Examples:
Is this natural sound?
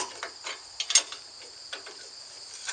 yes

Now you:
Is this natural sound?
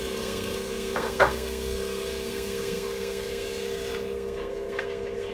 no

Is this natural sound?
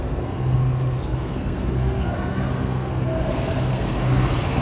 no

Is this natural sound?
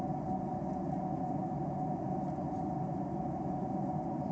yes